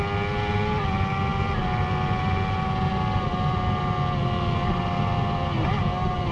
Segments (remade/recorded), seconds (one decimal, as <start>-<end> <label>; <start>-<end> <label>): 0.0-6.3 recorded